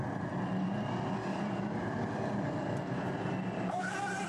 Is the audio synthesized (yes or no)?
yes